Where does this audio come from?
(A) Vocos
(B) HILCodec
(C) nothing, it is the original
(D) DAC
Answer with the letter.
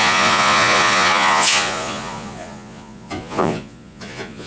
A